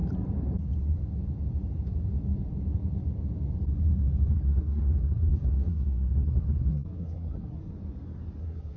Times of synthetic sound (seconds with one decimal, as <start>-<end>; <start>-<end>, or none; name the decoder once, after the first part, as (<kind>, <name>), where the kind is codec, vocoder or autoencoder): 4.3-7.7 (codec, SNAC); 8.4-8.8